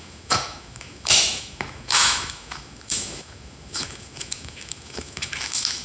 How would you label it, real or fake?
fake